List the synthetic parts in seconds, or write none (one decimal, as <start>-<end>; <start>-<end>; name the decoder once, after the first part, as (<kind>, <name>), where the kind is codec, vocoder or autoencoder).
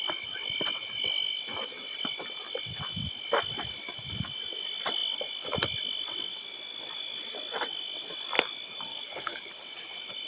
8.9-9.5 (codec, DAC)